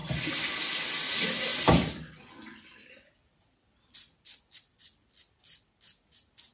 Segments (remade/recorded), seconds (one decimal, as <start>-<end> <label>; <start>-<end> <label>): 0.0-1.5 recorded; 1.5-4.4 remade; 4.4-6.5 recorded